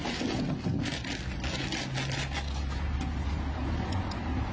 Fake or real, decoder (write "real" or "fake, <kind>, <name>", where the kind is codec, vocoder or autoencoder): real